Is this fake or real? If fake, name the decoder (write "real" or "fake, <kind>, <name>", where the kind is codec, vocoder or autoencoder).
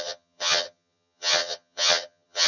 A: fake, vocoder, HiFi-GAN